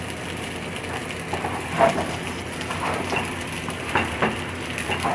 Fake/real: fake